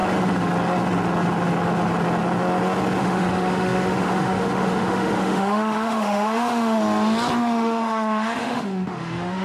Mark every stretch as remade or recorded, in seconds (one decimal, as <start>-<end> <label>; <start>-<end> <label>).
0.0-3.0 recorded; 3.0-6.8 remade; 6.8-7.4 recorded; 7.4-9.4 remade